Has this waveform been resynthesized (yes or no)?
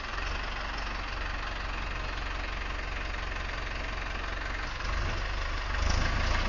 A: no